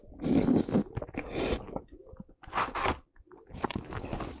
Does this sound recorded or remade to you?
recorded